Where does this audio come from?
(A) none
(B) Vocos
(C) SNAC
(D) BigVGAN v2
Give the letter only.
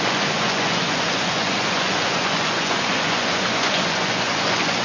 B